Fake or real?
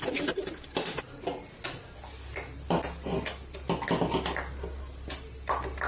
real